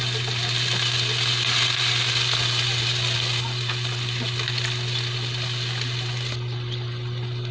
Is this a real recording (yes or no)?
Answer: yes